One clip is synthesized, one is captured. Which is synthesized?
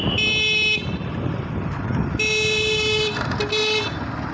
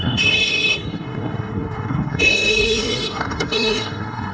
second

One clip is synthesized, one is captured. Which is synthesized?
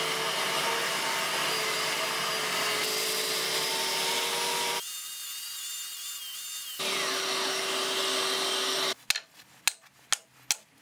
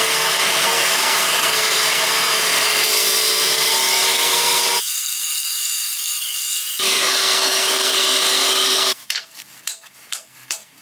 second